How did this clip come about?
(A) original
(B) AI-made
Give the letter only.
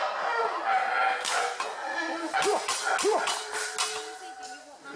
A